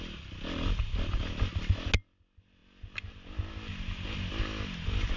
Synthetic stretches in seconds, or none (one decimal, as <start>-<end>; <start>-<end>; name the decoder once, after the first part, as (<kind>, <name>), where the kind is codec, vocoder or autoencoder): none